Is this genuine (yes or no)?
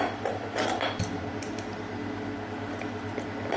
yes